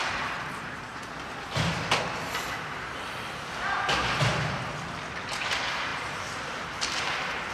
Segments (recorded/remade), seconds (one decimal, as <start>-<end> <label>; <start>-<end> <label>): 0.0-0.9 remade; 0.9-5.4 recorded; 5.4-7.5 remade